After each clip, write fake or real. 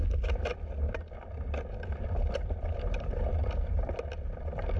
real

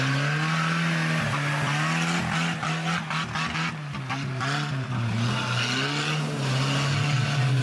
real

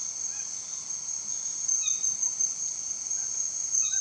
real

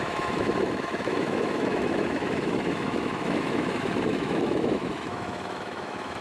fake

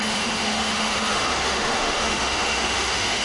fake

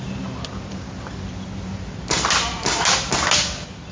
real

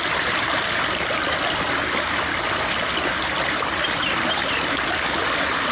real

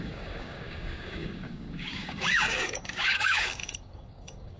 fake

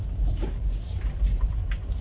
real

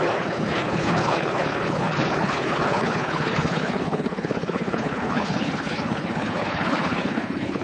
fake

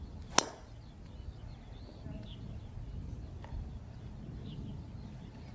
real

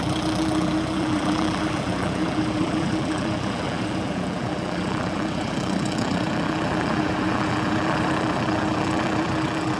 fake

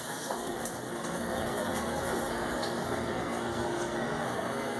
fake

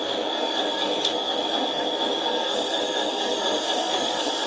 fake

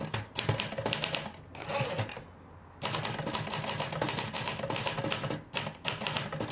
real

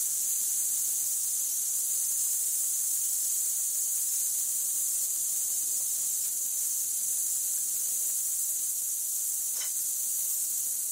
real